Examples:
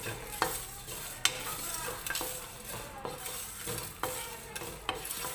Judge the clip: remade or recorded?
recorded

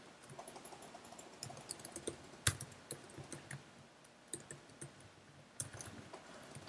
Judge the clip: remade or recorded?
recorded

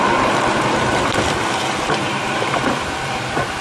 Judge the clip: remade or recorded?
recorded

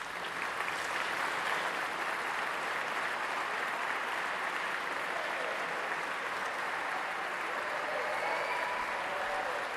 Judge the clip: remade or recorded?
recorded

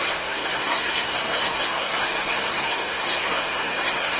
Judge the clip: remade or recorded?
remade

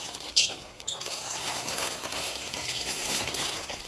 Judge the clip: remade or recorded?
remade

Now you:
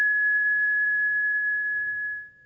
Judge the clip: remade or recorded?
remade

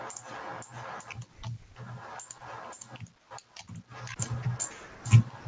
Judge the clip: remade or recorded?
recorded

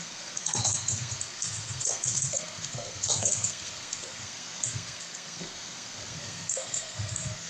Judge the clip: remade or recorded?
remade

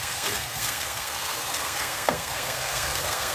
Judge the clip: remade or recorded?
remade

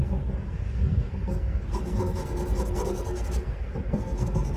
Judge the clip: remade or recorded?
remade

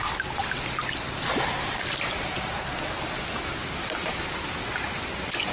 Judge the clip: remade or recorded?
recorded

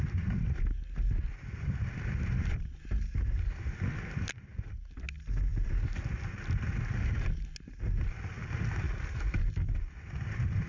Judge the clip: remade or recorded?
recorded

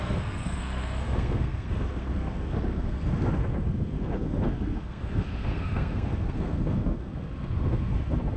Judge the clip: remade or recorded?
remade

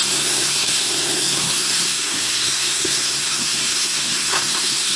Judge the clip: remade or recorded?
remade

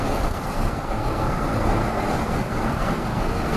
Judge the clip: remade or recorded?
remade